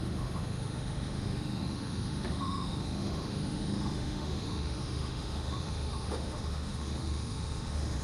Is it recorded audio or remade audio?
remade